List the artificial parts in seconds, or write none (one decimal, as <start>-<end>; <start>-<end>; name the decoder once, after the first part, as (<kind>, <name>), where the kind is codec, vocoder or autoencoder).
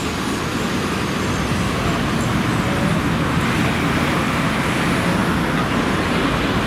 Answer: none